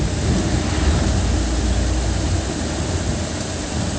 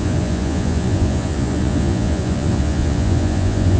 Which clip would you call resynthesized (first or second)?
second